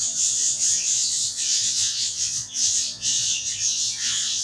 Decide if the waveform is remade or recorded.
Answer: remade